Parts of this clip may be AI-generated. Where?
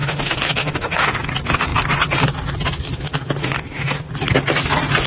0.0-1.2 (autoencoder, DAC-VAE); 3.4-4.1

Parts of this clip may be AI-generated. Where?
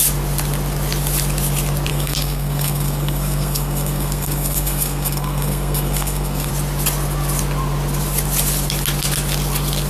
1.9-6.5 (codec, SNAC)